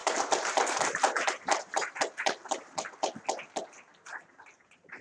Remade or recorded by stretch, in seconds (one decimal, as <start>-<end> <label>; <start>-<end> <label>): 0.0-2.8 remade; 2.8-3.9 recorded; 3.9-5.0 remade